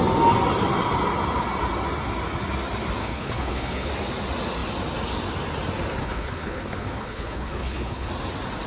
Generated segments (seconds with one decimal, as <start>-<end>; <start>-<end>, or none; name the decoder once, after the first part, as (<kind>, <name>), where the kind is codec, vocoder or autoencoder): 3.0-3.9 (codec, HILCodec); 6.0-8.1